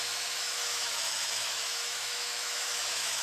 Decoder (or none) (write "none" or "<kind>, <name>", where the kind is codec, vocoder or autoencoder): autoencoder, DAC-VAE